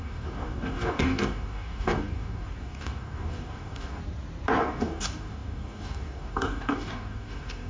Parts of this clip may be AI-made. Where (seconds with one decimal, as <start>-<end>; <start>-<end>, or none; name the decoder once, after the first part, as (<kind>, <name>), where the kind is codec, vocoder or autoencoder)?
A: 0.0-4.0 (codec, DAC); 4.6-7.7